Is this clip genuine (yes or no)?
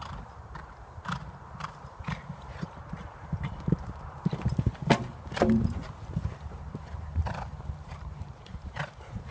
no